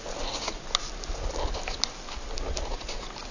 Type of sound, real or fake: real